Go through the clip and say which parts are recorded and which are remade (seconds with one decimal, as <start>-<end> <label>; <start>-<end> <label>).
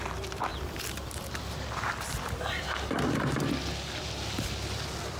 0.0-0.5 recorded; 0.5-2.6 remade; 2.6-5.2 recorded